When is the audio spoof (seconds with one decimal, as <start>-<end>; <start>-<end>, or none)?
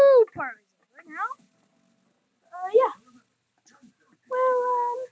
none